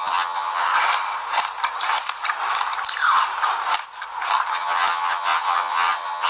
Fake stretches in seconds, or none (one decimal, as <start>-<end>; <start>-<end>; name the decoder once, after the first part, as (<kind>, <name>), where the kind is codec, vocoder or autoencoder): 0.0-0.7 (vocoder, HiFi-GAN); 4.5-6.3